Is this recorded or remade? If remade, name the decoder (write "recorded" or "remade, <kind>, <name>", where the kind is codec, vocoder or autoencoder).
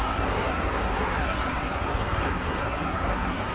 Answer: remade, codec, SNAC